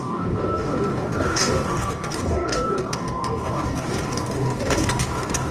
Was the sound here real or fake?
fake